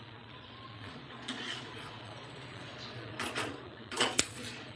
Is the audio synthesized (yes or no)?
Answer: yes